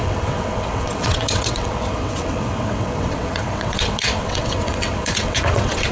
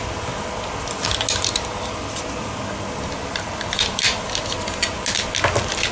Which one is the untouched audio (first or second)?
second